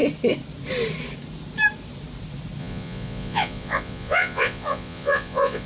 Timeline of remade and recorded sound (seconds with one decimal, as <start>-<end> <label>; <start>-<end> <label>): 0.0-2.6 recorded; 2.6-5.7 remade